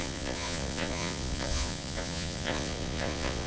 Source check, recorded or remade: remade